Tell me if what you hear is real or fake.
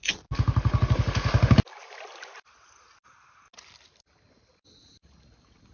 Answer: real